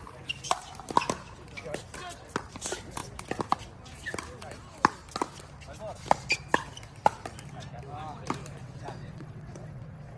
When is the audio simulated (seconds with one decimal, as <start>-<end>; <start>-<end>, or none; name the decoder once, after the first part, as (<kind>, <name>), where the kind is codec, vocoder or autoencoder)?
8.6-10.2 (vocoder, WaveNeXt)